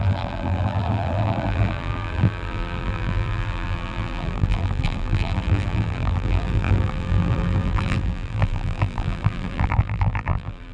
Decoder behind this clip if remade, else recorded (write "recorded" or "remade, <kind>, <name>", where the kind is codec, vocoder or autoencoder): remade, vocoder, BigVGAN v2